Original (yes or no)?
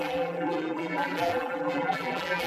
no